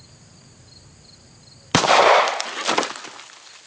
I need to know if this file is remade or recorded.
recorded